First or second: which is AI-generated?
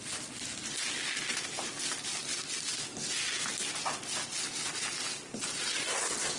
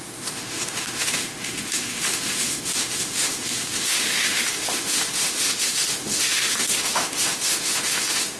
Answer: second